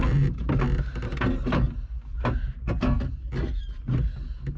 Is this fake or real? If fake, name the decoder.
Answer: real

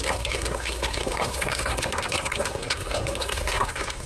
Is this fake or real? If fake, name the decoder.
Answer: fake, codec, SNAC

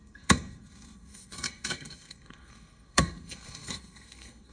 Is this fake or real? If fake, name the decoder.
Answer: fake, codec, SNAC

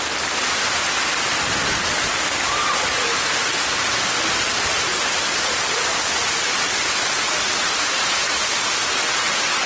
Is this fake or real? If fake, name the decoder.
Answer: real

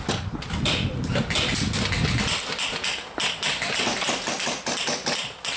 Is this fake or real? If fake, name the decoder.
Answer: real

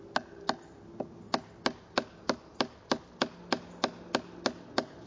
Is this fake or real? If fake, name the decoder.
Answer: real